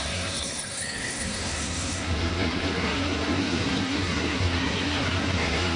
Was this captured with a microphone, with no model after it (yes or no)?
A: no